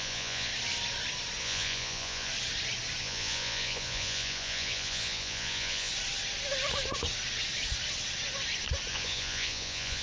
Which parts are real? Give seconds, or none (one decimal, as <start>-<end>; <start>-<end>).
0.5-1.4; 2.3-3.0; 5.9-8.9